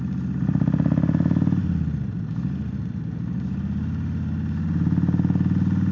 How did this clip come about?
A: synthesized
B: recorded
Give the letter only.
B